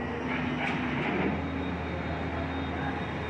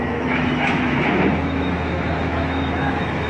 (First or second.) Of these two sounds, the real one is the first